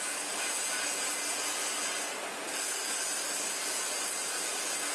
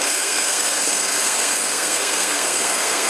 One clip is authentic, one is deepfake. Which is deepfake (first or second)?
second